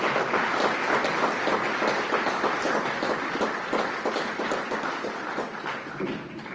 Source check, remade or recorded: recorded